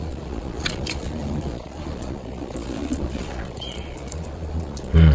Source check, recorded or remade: remade